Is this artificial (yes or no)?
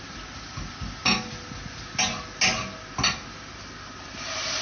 no